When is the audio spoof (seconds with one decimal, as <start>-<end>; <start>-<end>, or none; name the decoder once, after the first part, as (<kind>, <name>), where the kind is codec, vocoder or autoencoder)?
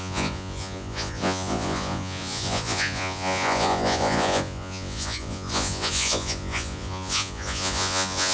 0.0-8.3 (vocoder, Vocos)